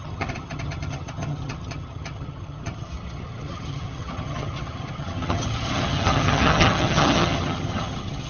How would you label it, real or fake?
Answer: fake